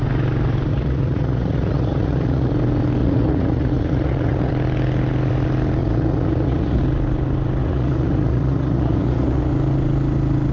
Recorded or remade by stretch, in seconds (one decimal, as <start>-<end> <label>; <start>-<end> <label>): 0.0-0.7 recorded; 0.7-2.5 remade; 2.5-3.0 recorded; 3.0-4.5 remade; 4.5-5.8 recorded; 5.8-6.8 remade; 6.8-7.6 recorded; 7.6-9.5 remade; 9.5-10.5 recorded